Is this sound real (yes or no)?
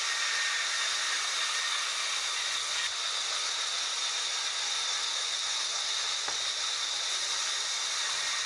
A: yes